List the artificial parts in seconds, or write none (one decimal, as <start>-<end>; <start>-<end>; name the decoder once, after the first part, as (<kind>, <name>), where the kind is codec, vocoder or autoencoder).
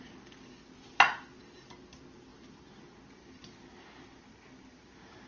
2.3-2.8 (vocoder, BigVGAN v2)